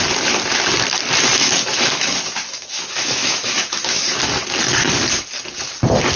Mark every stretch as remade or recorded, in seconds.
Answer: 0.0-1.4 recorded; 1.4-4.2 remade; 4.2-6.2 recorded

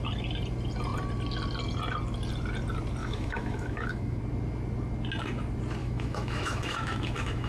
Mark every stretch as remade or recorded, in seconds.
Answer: 0.0-3.0 recorded; 3.0-4.2 remade; 4.2-5.8 recorded; 5.8-7.5 remade

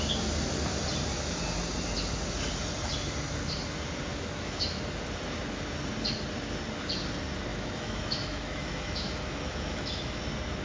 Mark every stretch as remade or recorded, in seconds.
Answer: 0.0-4.1 recorded; 4.1-4.8 remade; 4.8-7.5 recorded; 7.5-10.2 remade; 10.2-10.6 recorded

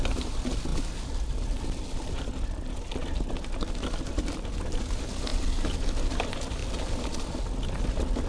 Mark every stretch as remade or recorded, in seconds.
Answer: 0.0-8.3 recorded

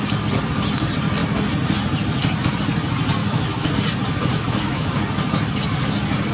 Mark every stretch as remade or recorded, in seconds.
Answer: 0.0-3.2 recorded; 3.2-3.7 remade; 3.7-4.3 recorded; 4.3-4.9 remade; 4.9-6.3 recorded

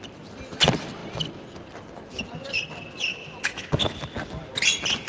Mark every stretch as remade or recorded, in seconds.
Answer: 0.0-3.1 recorded; 3.1-4.0 remade; 4.0-5.1 recorded

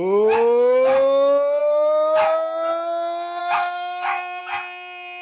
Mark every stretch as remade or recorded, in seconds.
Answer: 0.0-1.6 recorded; 1.6-2.2 remade; 2.2-3.4 recorded; 3.4-4.4 remade; 4.4-5.2 recorded